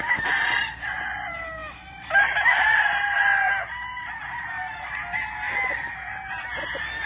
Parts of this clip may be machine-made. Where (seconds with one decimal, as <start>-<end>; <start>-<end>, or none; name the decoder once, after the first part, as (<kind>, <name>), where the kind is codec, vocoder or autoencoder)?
none